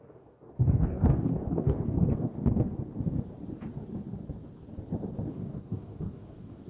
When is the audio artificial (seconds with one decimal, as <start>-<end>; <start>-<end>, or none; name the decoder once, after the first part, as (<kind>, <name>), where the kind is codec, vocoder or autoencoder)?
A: 0.0-2.4 (codec, DAC); 5.3-6.7